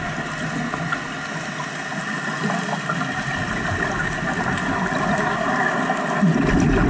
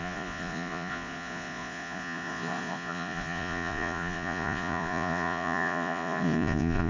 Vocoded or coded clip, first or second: second